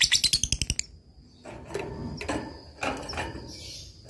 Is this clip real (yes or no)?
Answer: yes